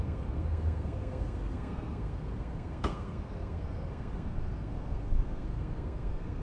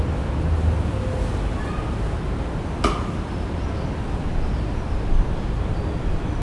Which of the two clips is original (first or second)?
second